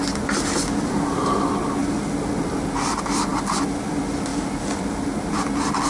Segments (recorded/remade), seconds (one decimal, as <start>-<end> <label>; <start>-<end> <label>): 0.0-5.9 recorded